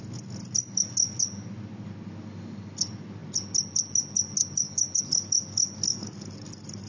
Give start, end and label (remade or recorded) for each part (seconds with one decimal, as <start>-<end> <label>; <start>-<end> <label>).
0.0-6.9 recorded